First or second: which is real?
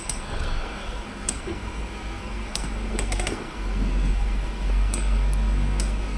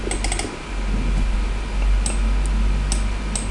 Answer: second